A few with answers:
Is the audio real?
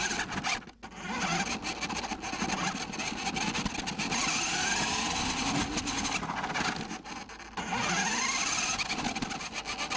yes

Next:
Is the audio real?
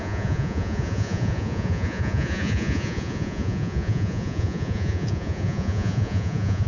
no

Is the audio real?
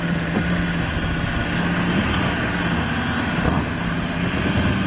yes